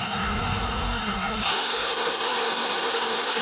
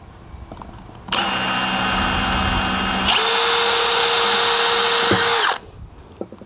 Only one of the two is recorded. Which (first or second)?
second